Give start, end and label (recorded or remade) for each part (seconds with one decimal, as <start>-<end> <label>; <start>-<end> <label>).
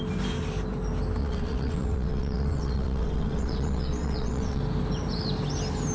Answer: 0.0-1.2 recorded; 1.2-4.6 remade; 4.6-5.9 recorded